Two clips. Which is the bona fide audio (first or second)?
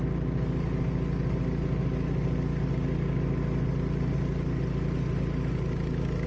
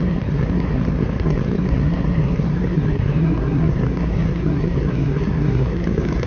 first